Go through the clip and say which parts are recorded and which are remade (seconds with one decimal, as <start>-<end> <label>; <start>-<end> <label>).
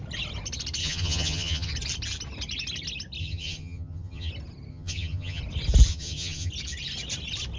0.0-0.8 recorded; 0.8-1.7 remade; 1.7-3.2 recorded; 3.2-4.3 remade; 4.3-4.7 recorded; 4.7-5.4 remade; 5.4-5.9 recorded; 5.9-6.5 remade; 6.5-7.6 recorded